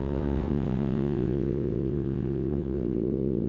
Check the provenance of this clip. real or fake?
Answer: fake